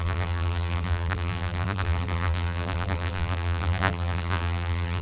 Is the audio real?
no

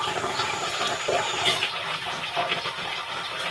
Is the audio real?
no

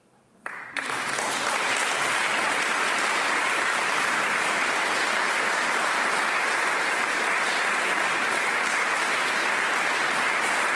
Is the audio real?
no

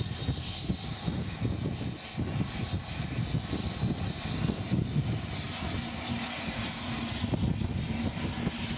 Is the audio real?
yes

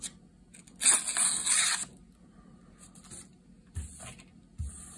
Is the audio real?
yes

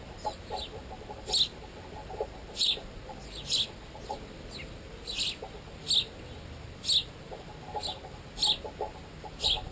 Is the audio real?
yes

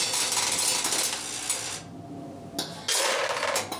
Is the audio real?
yes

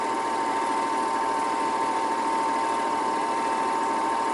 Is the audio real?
no